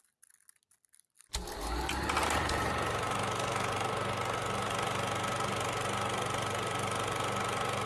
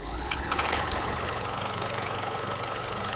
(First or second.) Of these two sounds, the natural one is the first